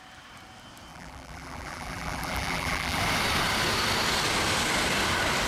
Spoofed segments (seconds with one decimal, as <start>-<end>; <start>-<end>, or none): 0.9-3.0